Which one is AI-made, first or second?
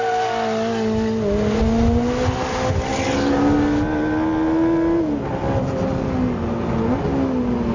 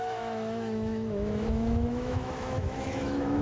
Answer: second